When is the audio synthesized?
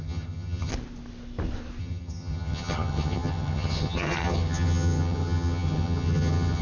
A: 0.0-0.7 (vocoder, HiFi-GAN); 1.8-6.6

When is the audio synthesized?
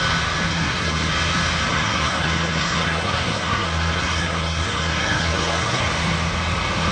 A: 0.5-1.1 (codec, SNAC); 1.7-5.8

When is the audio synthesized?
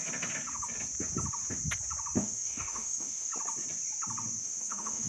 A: 2.2-3.3 (autoencoder, DAC-VAE); 4.4-5.1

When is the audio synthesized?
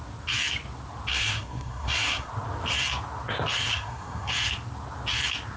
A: 1.1-2.3 (codec, SNAC); 3.7-4.3